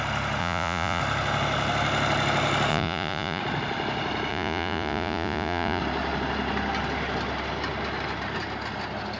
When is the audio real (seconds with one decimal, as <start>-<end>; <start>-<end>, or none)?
0.0-0.4; 1.0-2.7; 3.4-4.3; 5.8-9.2